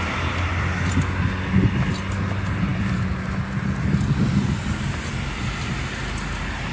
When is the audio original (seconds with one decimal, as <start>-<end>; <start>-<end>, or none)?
0.0-6.7